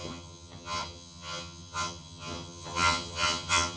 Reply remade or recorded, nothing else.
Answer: remade